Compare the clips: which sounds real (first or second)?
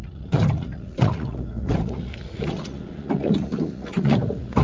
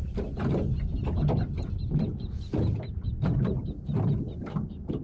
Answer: second